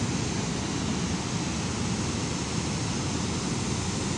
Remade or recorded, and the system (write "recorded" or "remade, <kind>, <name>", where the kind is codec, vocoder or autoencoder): recorded